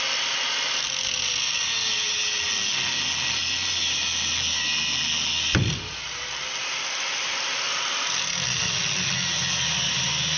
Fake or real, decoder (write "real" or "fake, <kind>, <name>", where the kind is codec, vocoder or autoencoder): real